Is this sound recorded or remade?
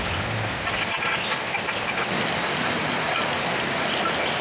recorded